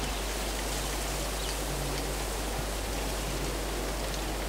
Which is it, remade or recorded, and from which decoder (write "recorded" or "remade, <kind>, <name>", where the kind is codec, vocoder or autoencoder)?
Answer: recorded